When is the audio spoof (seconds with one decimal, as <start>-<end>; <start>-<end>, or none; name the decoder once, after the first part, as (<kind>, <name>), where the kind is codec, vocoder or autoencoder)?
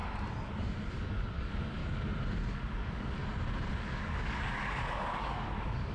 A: 0.9-1.8 (codec, DAC); 2.5-3.2; 3.7-5.9